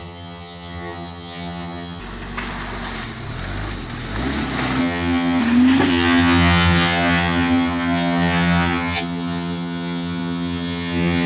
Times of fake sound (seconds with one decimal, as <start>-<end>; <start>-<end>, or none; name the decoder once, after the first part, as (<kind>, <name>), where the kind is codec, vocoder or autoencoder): 0.0-2.0 (vocoder, HiFi-GAN); 4.8-5.4; 5.9-11.3